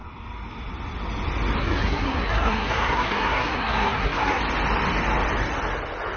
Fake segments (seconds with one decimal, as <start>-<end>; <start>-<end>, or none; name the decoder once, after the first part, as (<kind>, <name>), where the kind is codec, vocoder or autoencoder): 1.6-4.4 (codec, SNAC)